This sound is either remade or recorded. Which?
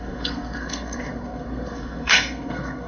remade